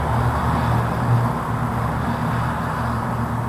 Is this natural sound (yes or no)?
yes